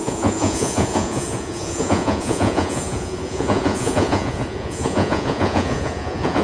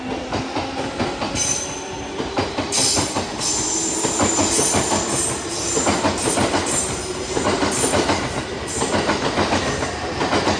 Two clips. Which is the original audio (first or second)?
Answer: second